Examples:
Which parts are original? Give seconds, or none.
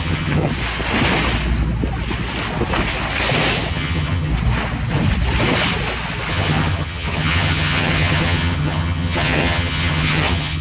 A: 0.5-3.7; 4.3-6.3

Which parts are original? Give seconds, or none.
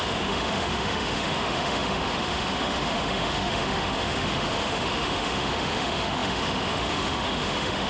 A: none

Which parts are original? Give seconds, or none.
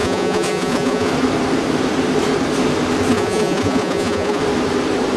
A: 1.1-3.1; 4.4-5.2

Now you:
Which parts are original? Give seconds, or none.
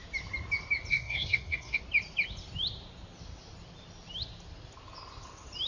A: 0.0-0.9; 1.8-5.7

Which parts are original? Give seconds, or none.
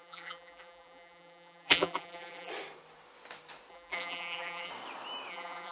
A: 2.5-3.7; 4.7-5.3